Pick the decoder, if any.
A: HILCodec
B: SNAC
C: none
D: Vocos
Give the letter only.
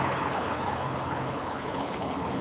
A